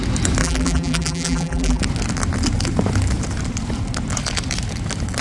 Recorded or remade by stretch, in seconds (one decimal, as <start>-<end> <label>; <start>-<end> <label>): 0.0-0.4 recorded; 0.4-1.8 remade; 1.8-5.2 recorded